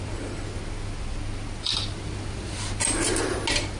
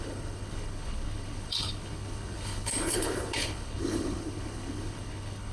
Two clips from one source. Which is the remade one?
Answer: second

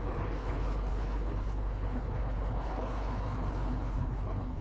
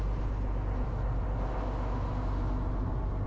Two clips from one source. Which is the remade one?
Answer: first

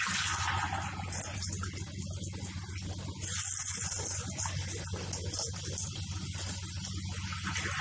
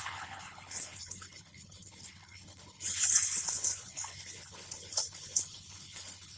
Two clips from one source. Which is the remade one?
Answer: second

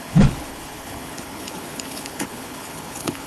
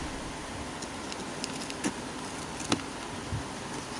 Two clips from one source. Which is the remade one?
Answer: first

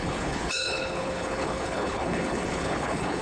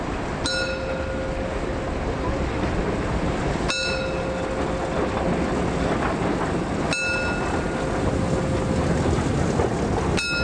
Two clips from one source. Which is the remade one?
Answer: first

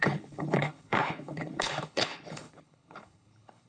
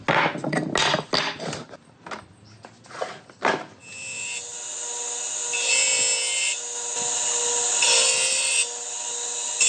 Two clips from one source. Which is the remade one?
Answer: first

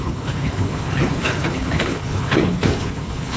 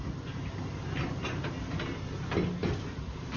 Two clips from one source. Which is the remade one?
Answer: first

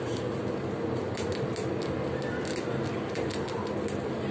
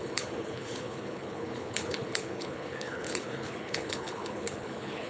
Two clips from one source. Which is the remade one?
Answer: second